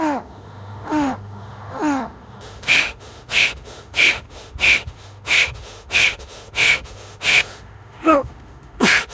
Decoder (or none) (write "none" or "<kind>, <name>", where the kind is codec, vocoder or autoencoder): autoencoder, DAC-VAE